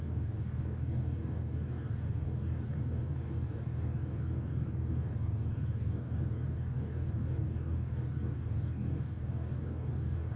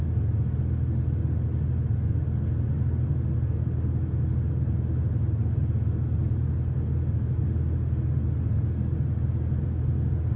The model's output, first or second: first